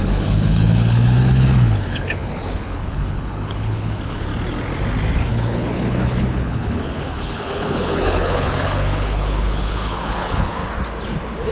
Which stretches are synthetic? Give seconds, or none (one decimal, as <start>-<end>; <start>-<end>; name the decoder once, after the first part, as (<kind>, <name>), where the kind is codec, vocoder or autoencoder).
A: 0.0-4.3 (codec, HILCodec); 5.3-10.6